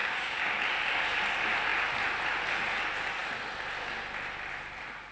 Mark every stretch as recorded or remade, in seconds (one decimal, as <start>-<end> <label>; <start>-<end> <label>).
0.0-0.5 remade; 0.5-5.1 recorded